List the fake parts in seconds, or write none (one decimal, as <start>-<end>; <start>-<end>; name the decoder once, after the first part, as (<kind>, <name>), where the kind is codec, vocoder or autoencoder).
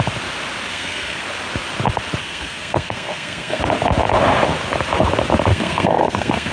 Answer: 0.7-1.2 (codec, SNAC); 2.2-3.6; 5.5-6.5